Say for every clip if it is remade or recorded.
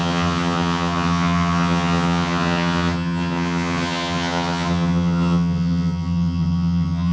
remade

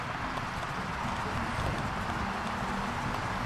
recorded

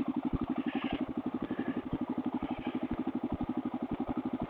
recorded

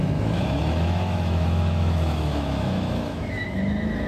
remade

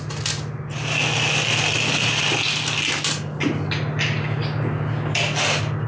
recorded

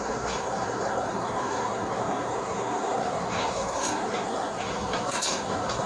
remade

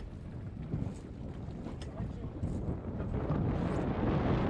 recorded